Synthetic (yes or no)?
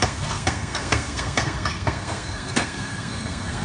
yes